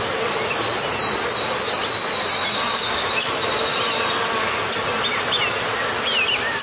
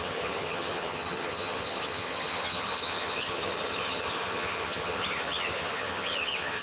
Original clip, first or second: first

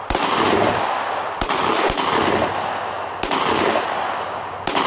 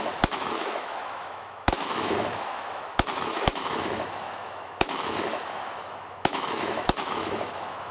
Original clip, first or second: first